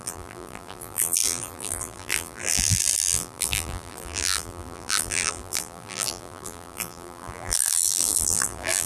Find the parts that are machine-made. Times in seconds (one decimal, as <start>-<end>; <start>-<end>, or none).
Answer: 0.0-8.9